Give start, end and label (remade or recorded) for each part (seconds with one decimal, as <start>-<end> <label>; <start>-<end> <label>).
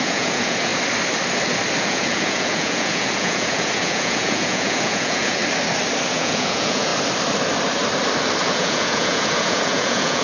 0.0-0.7 remade; 0.7-1.8 recorded; 1.8-5.4 remade; 5.4-6.1 recorded; 6.1-6.9 remade; 6.9-8.4 recorded; 8.4-10.2 remade